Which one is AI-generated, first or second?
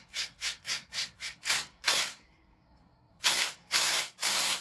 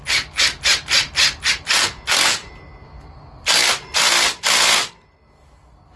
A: first